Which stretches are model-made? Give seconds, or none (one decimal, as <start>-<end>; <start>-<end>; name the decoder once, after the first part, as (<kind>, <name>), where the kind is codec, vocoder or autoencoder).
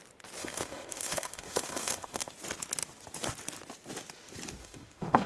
0.4-2.3 (autoencoder, DAC-VAE); 4.6-5.3